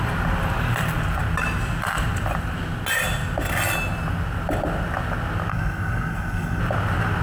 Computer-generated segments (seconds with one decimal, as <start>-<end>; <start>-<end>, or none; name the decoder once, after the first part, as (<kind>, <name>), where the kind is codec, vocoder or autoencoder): 5.5-6.6 (codec, SNAC)